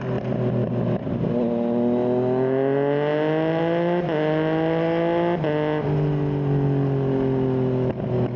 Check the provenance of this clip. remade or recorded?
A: recorded